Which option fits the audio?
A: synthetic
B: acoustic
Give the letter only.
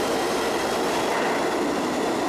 B